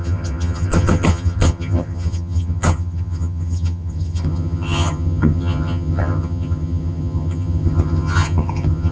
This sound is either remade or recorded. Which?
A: remade